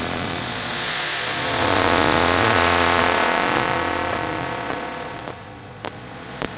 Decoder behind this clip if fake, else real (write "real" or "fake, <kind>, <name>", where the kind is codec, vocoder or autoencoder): fake, vocoder, Vocos